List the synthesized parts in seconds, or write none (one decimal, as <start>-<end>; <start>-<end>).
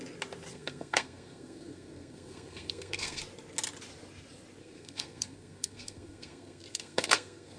0.5-3.2; 4.6-7.6